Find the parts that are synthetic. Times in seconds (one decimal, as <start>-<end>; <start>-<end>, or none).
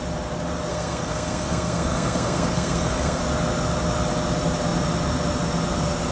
0.7-3.2